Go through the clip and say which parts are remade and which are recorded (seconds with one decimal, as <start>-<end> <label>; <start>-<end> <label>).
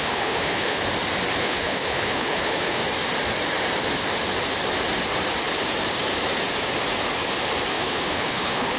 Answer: 0.0-0.8 remade; 0.8-1.4 recorded; 1.4-2.8 remade; 2.8-7.7 recorded; 7.7-8.8 remade